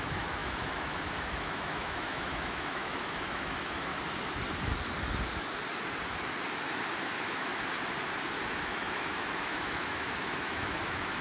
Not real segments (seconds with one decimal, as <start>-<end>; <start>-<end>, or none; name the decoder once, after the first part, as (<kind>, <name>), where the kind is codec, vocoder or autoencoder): 0.0-3.9 (autoencoder, DAC-VAE); 7.0-7.5; 8.5-11.2